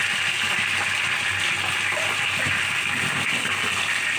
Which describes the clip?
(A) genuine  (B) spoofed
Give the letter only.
B